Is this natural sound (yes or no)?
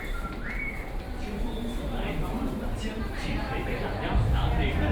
no